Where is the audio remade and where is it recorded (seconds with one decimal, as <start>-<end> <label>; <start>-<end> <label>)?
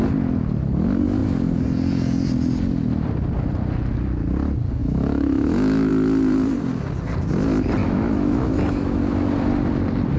0.0-4.8 recorded; 4.8-5.9 remade; 5.9-7.8 recorded; 7.8-9.0 remade; 9.0-10.2 recorded